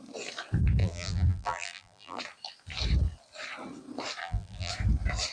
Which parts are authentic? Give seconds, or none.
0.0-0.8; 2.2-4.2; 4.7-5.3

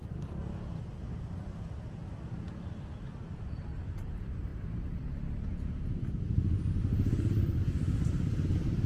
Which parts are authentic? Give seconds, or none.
0.0-8.9

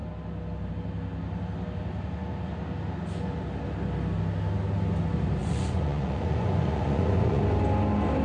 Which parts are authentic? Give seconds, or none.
0.0-5.4; 7.4-8.2

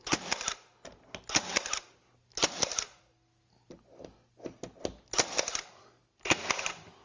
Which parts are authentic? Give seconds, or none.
0.0-7.0